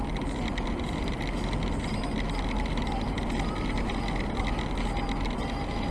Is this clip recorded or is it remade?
recorded